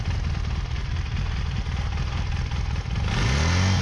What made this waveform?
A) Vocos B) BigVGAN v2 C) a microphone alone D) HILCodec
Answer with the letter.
C